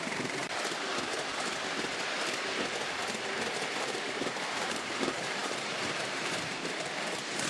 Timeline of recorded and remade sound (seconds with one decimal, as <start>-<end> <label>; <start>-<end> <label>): 0.0-0.4 remade; 0.4-3.8 recorded; 3.8-7.5 remade